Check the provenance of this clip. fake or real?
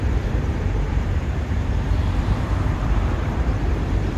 fake